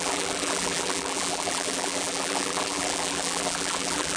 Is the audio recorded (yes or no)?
no